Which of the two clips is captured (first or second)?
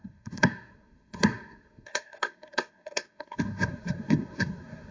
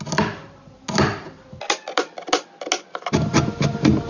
second